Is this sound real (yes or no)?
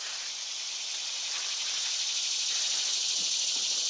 no